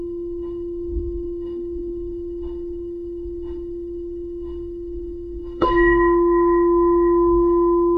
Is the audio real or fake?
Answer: fake